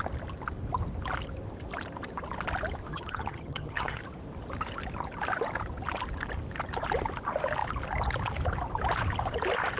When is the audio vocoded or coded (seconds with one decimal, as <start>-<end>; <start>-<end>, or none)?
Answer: 2.9-4.0

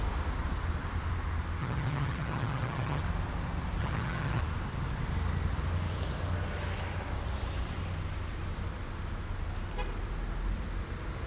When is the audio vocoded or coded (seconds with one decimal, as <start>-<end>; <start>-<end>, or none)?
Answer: 1.6-3.0; 3.8-4.4